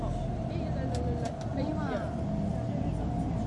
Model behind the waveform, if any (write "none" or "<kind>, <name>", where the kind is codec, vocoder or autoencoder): none